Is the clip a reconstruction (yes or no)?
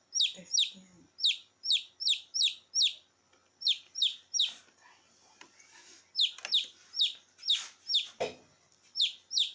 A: no